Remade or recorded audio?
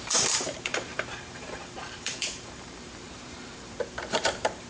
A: remade